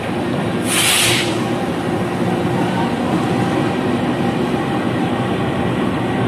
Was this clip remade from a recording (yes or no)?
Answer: no